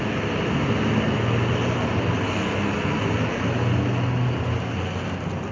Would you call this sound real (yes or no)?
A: yes